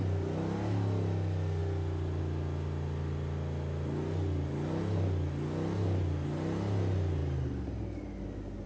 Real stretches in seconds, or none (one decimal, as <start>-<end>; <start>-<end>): 0.0-8.7